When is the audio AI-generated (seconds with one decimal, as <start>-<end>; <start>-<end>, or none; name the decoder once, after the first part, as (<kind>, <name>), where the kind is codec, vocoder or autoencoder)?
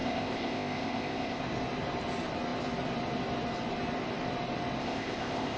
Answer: 0.0-1.4 (codec, ZipCodec); 4.8-5.6